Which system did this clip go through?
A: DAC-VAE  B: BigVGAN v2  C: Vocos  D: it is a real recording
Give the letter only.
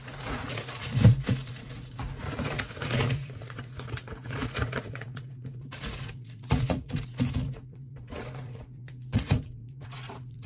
C